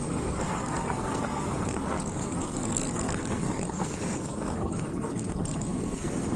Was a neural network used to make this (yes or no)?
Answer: yes